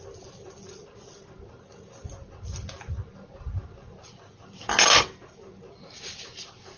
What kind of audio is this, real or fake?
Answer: real